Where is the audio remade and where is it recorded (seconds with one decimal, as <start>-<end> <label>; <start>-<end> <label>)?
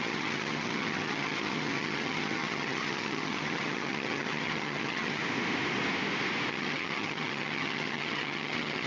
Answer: 0.0-5.2 remade; 5.2-6.5 recorded; 6.5-8.9 remade